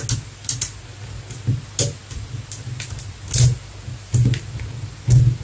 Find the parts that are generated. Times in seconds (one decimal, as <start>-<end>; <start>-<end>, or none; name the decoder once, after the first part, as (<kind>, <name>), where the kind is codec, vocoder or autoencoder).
none